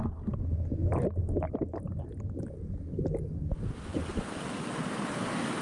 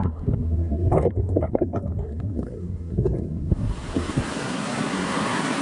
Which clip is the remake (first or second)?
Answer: second